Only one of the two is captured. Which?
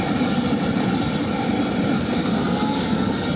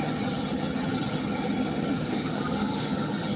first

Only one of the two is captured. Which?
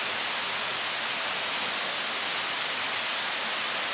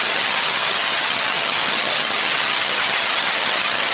first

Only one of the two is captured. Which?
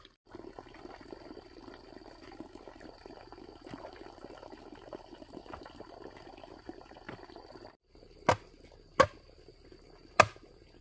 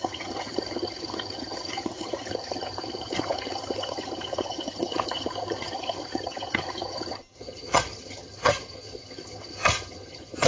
first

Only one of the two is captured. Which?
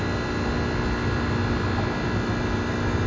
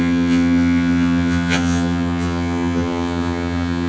first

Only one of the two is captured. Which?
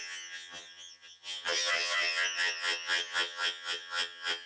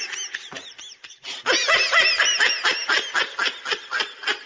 second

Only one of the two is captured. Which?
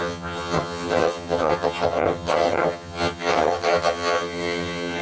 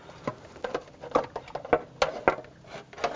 second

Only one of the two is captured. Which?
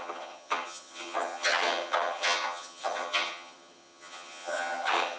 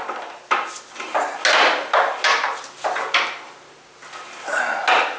second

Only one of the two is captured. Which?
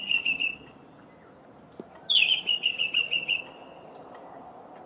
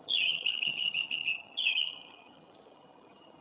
first